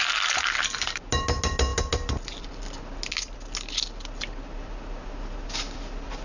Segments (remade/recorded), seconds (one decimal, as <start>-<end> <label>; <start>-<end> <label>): 0.0-6.2 recorded